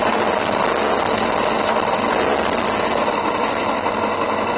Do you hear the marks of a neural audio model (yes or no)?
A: no